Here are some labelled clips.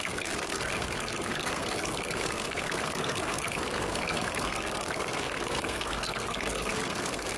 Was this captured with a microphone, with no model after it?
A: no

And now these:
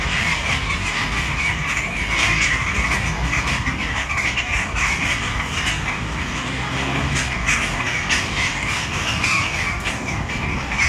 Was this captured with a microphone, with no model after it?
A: no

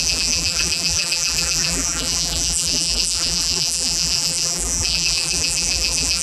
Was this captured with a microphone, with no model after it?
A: no